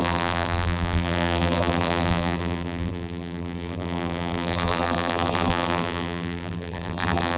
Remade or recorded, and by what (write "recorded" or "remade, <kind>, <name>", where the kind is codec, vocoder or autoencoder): remade, vocoder, BigVGAN v2